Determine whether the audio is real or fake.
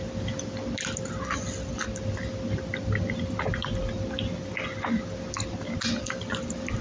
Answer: real